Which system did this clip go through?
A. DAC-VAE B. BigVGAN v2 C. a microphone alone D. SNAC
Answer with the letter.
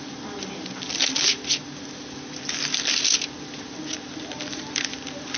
C